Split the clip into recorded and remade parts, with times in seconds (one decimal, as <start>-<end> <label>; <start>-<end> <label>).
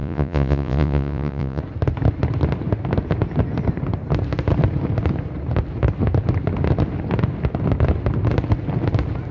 0.0-1.6 remade; 1.6-9.3 recorded